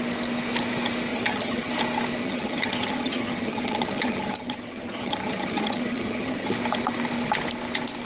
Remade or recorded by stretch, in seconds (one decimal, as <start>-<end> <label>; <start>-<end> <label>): 0.0-1.1 recorded; 1.1-1.7 remade; 1.7-2.2 recorded; 2.2-6.5 remade; 6.5-8.1 recorded